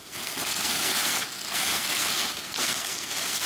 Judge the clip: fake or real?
fake